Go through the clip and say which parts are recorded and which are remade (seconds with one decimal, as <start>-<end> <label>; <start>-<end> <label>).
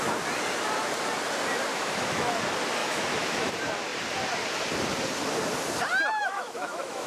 0.0-1.7 recorded; 1.7-2.4 remade; 2.4-2.8 recorded; 2.8-3.5 remade; 3.5-6.2 recorded; 6.2-7.1 remade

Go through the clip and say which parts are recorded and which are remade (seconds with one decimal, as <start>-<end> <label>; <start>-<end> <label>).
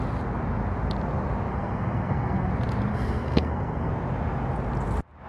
0.0-1.5 recorded; 1.5-2.5 remade; 2.5-2.9 recorded; 2.9-3.9 remade; 3.9-5.3 recorded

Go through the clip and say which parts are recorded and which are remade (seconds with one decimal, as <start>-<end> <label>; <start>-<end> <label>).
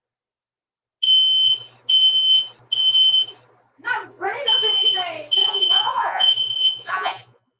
0.0-5.4 recorded; 5.4-7.6 remade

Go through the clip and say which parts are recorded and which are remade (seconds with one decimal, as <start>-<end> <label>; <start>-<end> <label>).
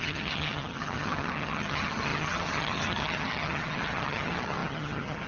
0.0-5.3 remade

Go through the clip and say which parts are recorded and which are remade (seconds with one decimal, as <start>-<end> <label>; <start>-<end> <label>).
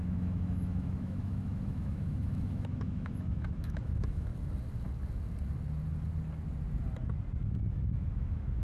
0.0-4.3 remade; 4.3-7.7 recorded; 7.7-8.6 remade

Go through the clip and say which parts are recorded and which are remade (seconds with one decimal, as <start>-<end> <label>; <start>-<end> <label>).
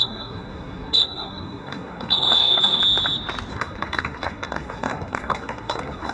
0.0-2.8 remade; 2.8-3.5 recorded; 3.5-6.1 remade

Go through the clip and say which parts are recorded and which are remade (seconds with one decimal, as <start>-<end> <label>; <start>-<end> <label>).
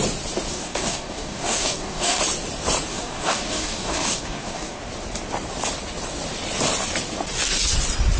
0.0-0.5 recorded; 0.5-2.2 remade; 2.2-2.9 recorded; 2.9-4.8 remade; 4.8-8.2 recorded